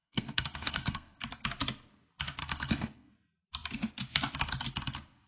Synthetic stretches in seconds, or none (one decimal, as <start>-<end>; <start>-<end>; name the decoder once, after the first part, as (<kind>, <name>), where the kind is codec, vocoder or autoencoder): 0.0-1.2 (codec, SNAC); 2.4-3.1